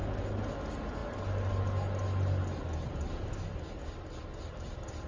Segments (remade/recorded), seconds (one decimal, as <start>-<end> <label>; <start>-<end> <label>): 0.0-5.1 recorded